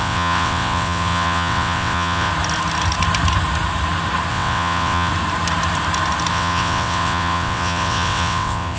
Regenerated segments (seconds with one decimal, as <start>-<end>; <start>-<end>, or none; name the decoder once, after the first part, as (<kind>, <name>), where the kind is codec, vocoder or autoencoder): 0.0-2.3 (vocoder, WaveNeXt); 4.3-5.1; 6.3-8.8